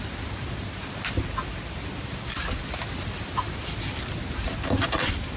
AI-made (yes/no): no